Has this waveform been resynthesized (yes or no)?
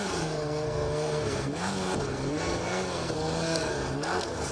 yes